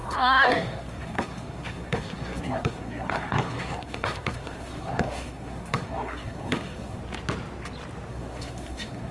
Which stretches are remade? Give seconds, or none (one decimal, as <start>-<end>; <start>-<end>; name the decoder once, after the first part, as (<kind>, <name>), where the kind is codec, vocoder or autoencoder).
0.0-7.0 (codec, SNAC); 8.1-9.1

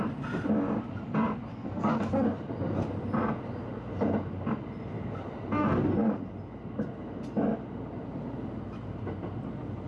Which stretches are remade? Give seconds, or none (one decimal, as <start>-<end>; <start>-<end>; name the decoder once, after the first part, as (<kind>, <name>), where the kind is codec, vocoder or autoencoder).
1.5-2.1 (codec, SNAC)

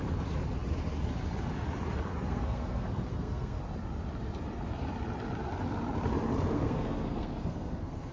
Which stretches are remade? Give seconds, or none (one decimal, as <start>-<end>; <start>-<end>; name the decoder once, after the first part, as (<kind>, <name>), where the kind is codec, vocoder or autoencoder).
2.1-3.6 (codec, SNAC); 6.5-8.1

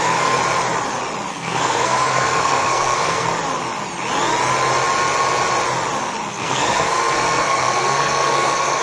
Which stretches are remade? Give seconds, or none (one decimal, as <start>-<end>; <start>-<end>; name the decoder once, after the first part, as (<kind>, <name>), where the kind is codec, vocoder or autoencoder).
0.0-0.4 (codec, SNAC); 1.3-3.3; 6.3-8.8